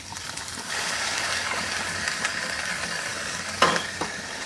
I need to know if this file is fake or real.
fake